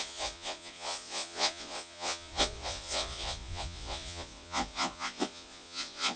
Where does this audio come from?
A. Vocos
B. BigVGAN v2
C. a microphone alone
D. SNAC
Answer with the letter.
A